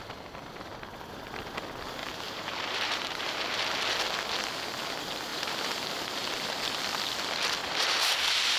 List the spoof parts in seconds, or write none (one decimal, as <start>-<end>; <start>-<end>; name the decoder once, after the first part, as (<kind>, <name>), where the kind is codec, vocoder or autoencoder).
2.0-3.9 (vocoder, BigVGAN v2); 5.3-6.6; 7.6-8.6